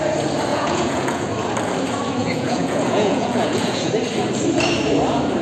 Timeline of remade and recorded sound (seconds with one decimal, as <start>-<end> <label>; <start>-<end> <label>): 0.0-0.5 recorded; 0.5-1.3 remade; 1.3-2.2 recorded; 2.2-3.9 remade; 3.9-5.4 recorded